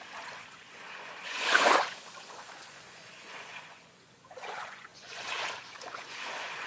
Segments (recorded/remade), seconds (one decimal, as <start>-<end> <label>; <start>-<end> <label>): 0.0-6.7 remade